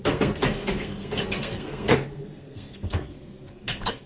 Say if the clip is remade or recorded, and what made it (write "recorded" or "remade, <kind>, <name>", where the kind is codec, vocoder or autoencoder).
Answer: remade, codec, SNAC